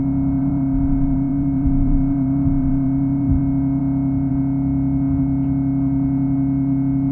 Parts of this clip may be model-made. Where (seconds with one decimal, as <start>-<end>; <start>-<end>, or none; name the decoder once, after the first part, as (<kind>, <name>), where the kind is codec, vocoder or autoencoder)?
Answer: 0.4-3.4 (vocoder, BigVGAN v2)

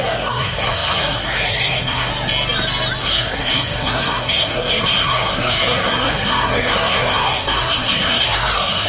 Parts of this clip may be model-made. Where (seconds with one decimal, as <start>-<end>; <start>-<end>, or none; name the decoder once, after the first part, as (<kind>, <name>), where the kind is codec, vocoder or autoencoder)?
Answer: 0.0-2.1 (codec, SNAC); 3.0-8.9

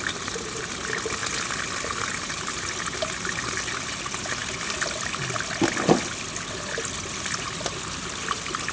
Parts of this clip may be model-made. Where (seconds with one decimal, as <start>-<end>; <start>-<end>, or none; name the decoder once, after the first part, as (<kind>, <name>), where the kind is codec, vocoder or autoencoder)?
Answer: none

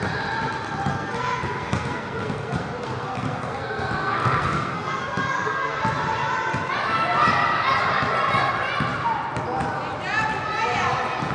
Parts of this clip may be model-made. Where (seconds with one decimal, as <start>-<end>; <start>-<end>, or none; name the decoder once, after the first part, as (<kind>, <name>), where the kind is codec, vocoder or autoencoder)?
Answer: 0.9-5.8 (codec, SNAC)

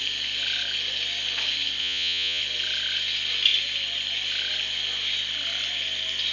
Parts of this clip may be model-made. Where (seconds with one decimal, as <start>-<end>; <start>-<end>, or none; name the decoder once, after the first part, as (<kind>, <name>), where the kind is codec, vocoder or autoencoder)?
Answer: 1.8-2.4 (vocoder, Vocos)

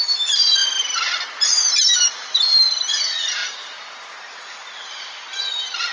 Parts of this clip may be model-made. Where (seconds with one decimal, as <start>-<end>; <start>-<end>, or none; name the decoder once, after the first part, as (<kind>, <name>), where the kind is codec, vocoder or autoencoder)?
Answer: none